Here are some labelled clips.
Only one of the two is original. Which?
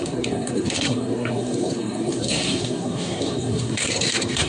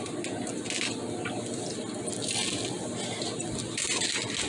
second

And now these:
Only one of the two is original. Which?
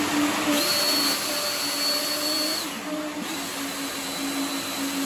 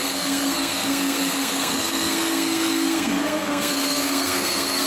first